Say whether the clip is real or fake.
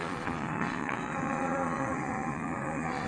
fake